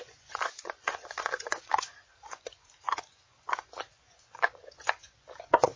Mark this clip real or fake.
fake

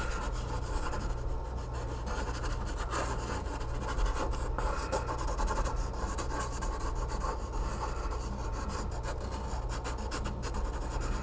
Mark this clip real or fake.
real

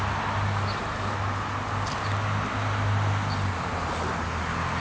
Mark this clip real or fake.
real